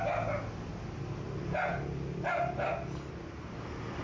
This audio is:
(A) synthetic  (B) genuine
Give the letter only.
B